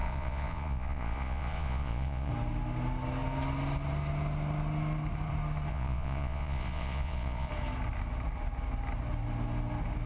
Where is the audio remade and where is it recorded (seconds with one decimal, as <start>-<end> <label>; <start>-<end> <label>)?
0.0-2.3 remade; 2.3-5.7 recorded; 5.7-7.5 remade; 7.5-10.1 recorded